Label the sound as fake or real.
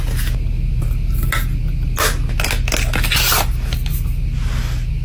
real